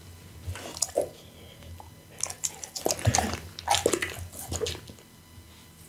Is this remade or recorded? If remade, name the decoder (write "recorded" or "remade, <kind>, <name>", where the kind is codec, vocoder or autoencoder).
recorded